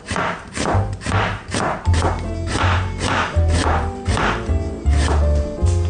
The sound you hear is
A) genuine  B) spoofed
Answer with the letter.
B